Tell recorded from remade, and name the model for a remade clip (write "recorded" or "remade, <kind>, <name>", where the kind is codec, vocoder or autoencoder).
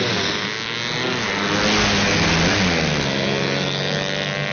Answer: recorded